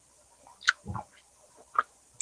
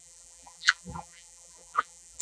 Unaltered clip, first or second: first